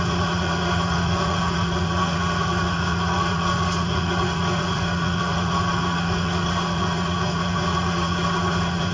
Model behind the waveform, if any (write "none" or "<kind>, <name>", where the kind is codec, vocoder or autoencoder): vocoder, Vocos